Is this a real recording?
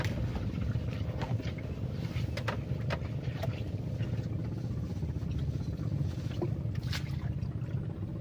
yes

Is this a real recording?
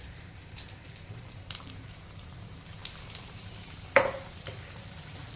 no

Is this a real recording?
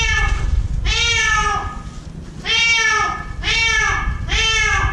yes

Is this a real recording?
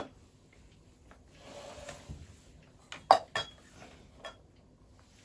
yes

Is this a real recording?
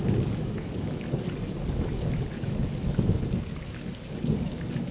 no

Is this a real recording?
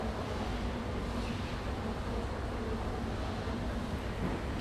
yes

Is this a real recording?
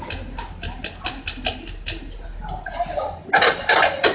yes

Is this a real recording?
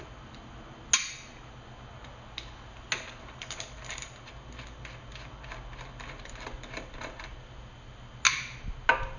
yes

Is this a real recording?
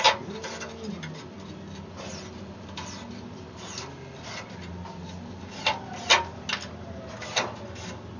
yes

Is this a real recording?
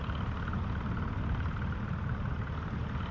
yes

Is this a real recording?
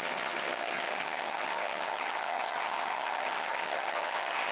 no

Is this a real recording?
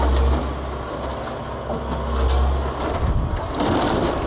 yes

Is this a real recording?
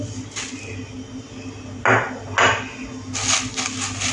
yes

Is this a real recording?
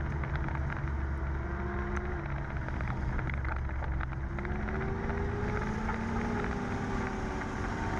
yes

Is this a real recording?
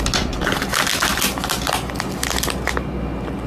yes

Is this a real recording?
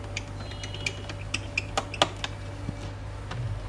yes